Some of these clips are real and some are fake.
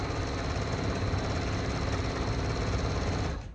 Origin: real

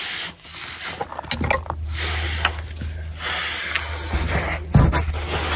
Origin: real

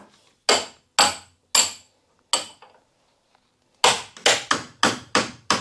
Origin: real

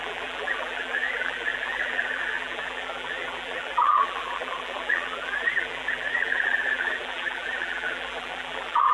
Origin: fake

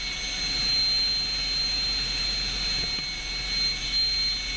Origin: real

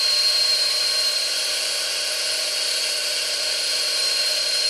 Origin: fake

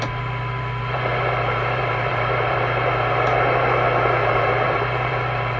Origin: fake